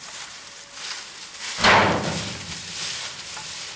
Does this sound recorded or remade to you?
recorded